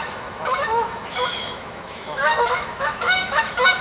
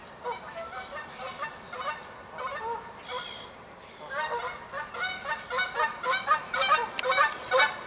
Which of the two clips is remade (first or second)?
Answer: first